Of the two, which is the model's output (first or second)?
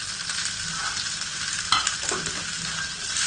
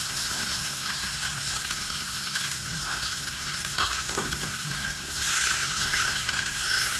second